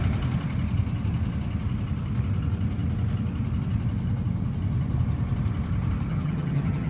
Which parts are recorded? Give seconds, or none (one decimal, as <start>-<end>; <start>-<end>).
0.0-6.1